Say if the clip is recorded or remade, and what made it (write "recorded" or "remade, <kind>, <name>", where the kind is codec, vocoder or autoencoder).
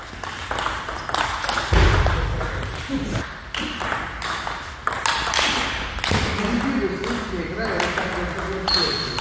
recorded